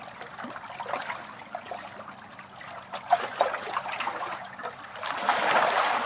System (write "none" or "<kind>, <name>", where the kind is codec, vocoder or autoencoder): none